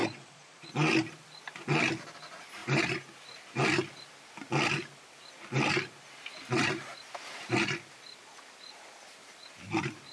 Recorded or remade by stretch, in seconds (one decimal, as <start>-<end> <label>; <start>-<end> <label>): 0.0-0.7 remade; 0.7-10.1 recorded

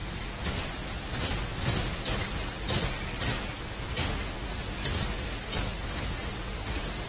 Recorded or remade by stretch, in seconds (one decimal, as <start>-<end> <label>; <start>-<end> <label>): 0.0-7.1 recorded

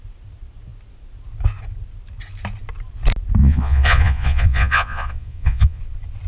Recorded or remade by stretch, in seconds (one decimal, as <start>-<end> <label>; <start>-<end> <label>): 0.0-3.4 recorded; 3.4-5.8 remade; 5.8-6.3 recorded